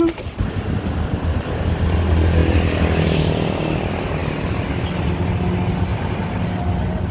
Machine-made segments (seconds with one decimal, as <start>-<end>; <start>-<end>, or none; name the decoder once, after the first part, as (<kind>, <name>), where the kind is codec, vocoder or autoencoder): 5.9-6.5 (vocoder, BigVGAN v2)